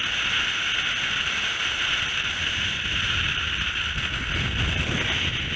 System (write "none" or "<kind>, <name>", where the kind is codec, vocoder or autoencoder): none